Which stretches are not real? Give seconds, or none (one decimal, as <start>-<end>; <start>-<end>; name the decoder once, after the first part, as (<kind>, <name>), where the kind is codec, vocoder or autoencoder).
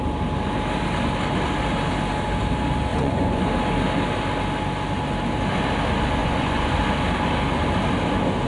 2.9-3.4 (vocoder, Vocos); 6.2-6.8